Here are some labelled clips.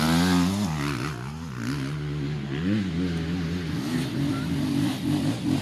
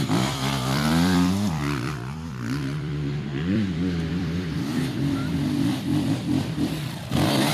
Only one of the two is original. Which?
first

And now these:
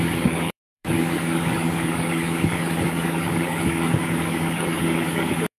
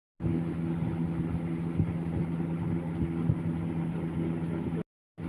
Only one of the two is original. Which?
second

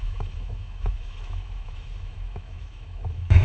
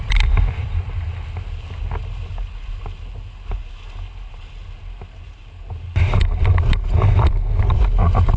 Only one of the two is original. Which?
second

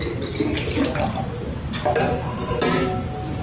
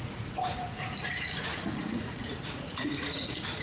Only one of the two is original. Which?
first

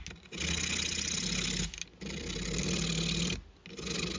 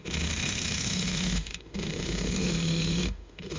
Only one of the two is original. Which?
first